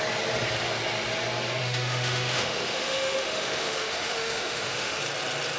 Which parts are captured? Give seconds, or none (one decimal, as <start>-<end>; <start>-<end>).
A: 0.0-1.6; 5.0-5.6